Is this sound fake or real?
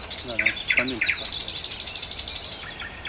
real